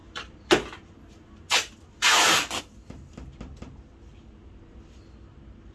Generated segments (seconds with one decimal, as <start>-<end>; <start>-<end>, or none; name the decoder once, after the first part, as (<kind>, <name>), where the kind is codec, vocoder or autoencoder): none

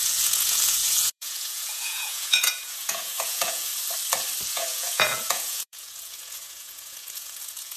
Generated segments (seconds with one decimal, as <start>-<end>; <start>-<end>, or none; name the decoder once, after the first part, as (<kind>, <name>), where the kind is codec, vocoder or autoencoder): 0.0-3.7 (vocoder, Vocos); 4.5-7.8

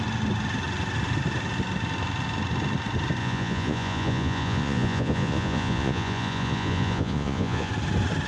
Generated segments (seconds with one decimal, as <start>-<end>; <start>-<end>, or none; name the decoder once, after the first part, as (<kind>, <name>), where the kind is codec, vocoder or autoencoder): 3.2-7.7 (vocoder, Vocos)

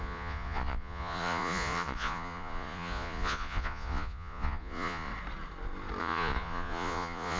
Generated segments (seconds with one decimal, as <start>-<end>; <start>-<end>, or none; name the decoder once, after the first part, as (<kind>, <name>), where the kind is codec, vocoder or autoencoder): 0.0-5.1 (vocoder, Vocos); 6.0-7.4